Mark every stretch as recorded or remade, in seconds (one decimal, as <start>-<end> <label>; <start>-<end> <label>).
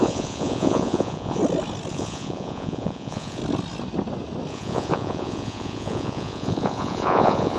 0.0-1.4 remade; 1.4-1.9 recorded; 1.9-3.4 remade; 3.4-4.5 recorded; 4.5-7.6 remade